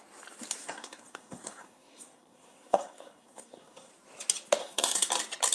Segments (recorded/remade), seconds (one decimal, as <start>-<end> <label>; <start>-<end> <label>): 0.0-0.6 recorded; 0.6-3.9 remade; 3.9-4.6 recorded; 4.6-5.1 remade; 5.1-5.5 recorded